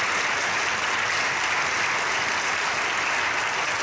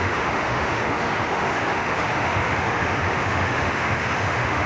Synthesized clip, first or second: second